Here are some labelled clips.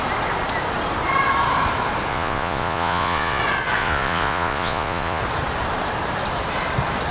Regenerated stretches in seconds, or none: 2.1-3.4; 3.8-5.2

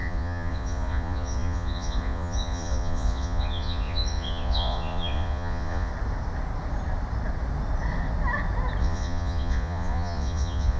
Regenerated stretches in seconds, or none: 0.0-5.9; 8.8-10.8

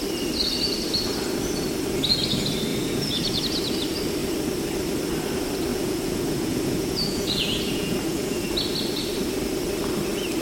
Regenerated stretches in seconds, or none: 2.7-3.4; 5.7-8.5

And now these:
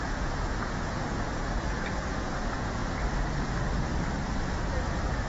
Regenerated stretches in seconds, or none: 0.0-2.8

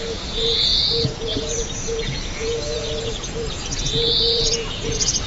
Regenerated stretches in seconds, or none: 0.0-5.3

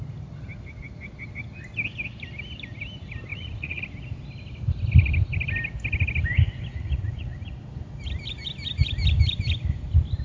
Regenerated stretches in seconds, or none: 3.3-3.8; 6.7-7.6

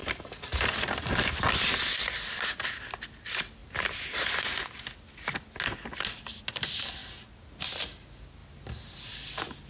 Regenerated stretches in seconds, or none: none